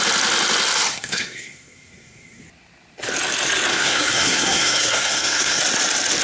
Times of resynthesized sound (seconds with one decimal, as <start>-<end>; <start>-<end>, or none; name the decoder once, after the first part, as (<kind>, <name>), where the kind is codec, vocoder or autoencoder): 0.9-2.4 (codec, SNAC); 3.7-5.6